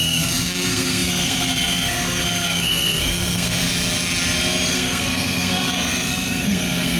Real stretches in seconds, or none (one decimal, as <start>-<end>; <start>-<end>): 3.7-4.7